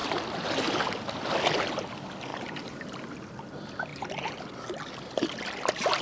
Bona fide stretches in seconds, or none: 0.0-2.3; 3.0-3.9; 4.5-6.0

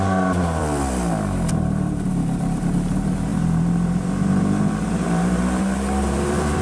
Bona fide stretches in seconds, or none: 0.6-1.5

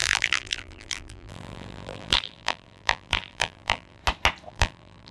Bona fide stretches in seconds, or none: 4.0-4.5